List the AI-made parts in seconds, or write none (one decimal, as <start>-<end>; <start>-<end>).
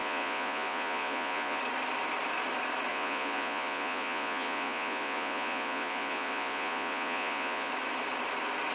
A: 0.0-1.6; 2.9-7.7